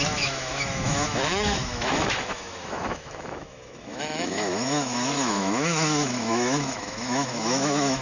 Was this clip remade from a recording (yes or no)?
yes